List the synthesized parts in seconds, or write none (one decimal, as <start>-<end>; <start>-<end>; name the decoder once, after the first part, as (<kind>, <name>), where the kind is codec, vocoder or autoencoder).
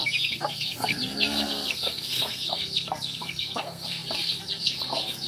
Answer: 0.0-5.3 (codec, SNAC)